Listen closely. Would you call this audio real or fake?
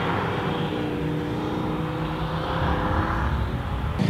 real